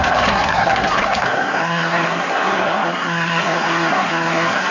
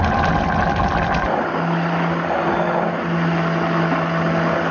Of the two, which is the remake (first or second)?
first